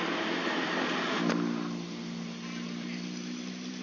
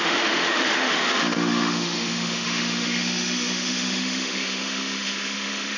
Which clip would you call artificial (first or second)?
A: second